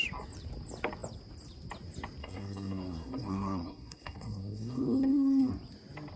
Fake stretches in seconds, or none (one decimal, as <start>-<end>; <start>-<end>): 2.2-5.5